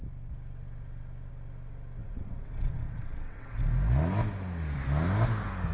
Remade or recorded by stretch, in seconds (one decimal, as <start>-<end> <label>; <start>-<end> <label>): 0.0-2.0 recorded; 2.0-3.6 remade; 3.6-5.7 recorded